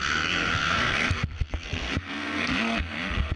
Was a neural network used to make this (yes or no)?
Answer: yes